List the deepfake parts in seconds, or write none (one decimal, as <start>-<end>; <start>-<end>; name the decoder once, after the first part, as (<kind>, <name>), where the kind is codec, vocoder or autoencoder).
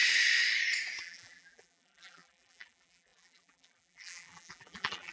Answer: 1.0-5.1 (vocoder, BigVGAN v2)